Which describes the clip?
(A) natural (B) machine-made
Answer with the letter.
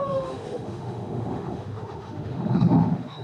B